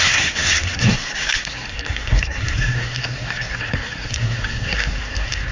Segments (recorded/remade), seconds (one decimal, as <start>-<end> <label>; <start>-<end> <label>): 0.0-5.5 remade